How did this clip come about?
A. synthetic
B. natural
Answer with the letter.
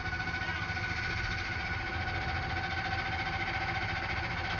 B